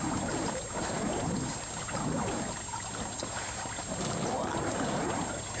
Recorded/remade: recorded